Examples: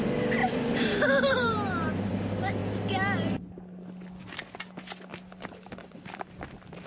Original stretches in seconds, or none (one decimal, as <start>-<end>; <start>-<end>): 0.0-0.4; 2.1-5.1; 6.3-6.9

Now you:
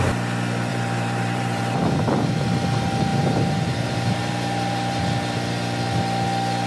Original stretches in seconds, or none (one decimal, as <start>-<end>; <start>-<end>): 0.0-0.7; 1.6-3.1; 5.0-6.7

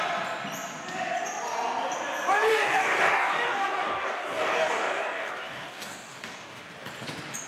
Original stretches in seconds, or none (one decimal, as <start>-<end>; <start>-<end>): 0.0-2.5; 6.6-7.5

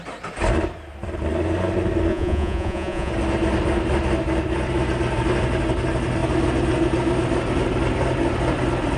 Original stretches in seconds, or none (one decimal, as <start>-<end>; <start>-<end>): 0.0-2.1; 3.1-9.0

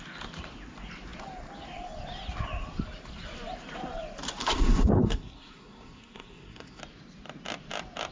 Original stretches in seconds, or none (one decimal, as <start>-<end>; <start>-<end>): 0.0-4.4; 6.8-8.1